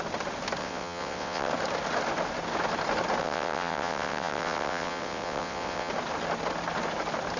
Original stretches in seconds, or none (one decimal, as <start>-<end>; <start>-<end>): 0.0-0.6; 1.5-3.2; 5.9-7.4